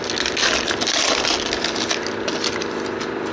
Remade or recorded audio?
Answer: recorded